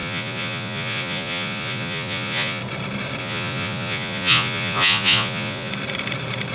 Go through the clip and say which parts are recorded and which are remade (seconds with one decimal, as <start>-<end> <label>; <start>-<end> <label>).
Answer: 0.0-2.6 remade; 2.6-3.2 recorded; 3.2-5.7 remade; 5.7-6.5 recorded